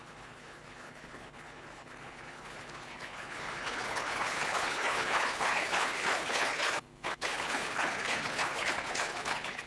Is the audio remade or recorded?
remade